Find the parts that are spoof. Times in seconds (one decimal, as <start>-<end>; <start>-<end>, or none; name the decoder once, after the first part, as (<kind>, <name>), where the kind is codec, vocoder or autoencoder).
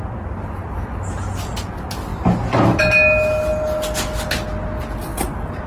none